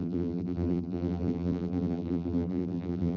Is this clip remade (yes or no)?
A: yes